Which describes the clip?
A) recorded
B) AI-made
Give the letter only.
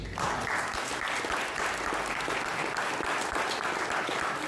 A